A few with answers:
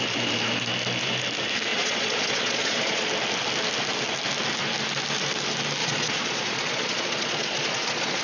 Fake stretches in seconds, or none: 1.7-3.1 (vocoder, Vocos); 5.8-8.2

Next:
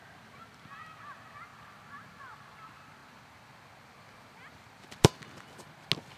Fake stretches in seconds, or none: none

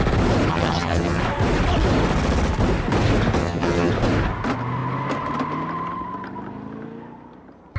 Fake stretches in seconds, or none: 0.5-1.2 (vocoder, HiFi-GAN); 3.4-3.9

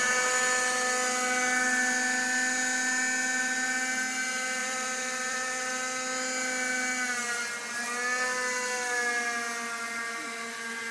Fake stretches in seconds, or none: 4.6-5.7 (vocoder, BigVGAN v2)

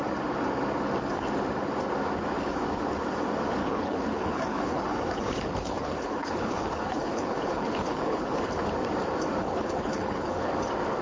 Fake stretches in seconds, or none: 3.6-8.5 (codec, HILCodec); 9.4-10.5